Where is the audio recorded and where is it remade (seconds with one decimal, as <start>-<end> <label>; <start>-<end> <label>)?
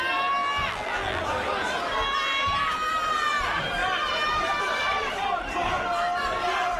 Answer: 0.0-0.4 recorded; 0.4-1.2 remade; 1.2-6.8 recorded